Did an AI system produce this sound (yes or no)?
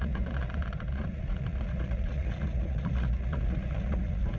yes